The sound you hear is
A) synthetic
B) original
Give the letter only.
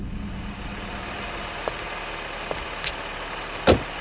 B